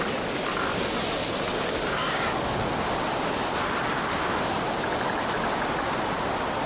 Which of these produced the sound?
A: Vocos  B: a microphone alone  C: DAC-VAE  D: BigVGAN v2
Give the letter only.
B